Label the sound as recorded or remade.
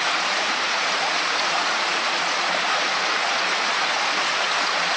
remade